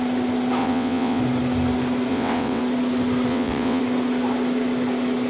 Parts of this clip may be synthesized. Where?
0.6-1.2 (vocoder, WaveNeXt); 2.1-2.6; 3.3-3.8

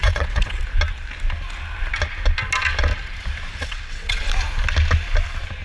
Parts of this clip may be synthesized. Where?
0.0-0.6 (vocoder, WaveNeXt); 3.5-4.2

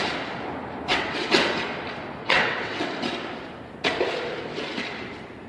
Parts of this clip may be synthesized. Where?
0.9-1.4 (vocoder, WaveNeXt); 2.2-2.9

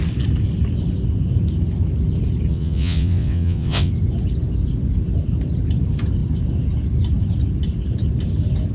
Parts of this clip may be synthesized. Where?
2.5-3.9 (vocoder, WaveNeXt)